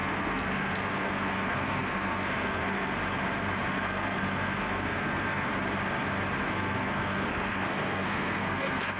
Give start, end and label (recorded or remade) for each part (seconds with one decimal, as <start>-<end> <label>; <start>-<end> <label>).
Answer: 0.0-3.0 remade; 3.0-3.7 recorded; 3.7-5.5 remade; 5.5-6.5 recorded; 6.5-9.0 remade